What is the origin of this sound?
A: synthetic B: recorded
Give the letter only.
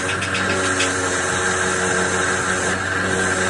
B